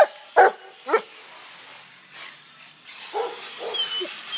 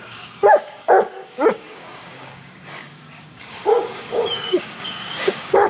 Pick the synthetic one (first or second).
second